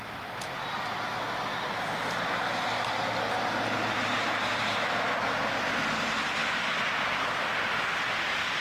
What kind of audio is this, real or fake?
real